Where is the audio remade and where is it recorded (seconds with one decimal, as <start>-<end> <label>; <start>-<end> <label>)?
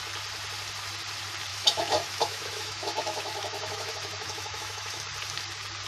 0.0-1.5 recorded; 1.5-5.0 remade; 5.0-5.9 recorded